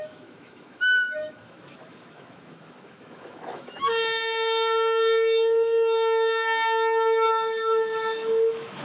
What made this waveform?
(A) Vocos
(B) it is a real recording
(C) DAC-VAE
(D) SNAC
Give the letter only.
C